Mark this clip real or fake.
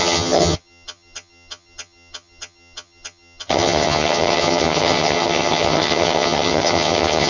fake